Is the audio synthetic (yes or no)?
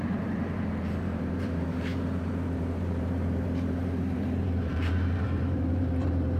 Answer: yes